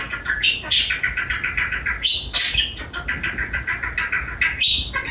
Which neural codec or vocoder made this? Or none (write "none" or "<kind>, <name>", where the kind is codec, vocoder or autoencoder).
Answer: none